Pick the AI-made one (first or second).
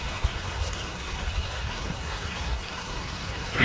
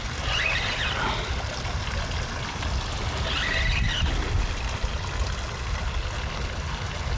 first